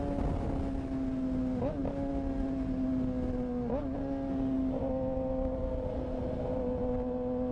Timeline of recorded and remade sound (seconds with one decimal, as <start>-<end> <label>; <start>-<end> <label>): 0.0-7.5 recorded